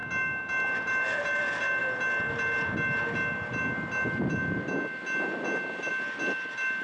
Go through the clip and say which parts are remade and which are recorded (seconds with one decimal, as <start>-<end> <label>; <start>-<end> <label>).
0.0-6.8 recorded